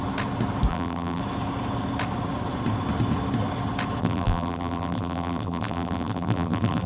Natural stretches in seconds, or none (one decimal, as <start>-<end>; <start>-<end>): 0.0-0.7; 1.2-4.0